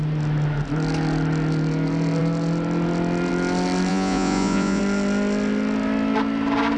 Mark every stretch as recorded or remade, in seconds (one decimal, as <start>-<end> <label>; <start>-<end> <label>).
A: 0.0-3.9 recorded; 3.9-4.8 remade; 4.8-6.8 recorded